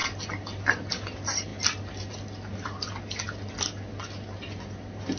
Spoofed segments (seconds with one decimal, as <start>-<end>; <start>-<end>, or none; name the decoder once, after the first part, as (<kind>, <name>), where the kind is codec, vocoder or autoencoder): none